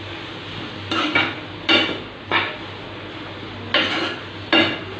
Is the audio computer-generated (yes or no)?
no